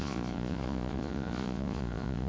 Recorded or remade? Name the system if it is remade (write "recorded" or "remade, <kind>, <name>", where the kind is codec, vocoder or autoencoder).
remade, vocoder, Vocos